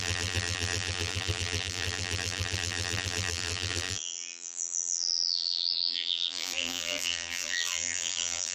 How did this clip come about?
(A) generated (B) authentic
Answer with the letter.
A